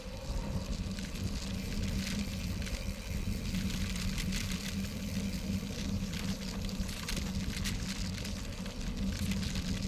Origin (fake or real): real